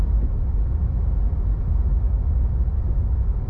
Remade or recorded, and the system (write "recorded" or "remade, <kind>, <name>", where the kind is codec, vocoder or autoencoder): recorded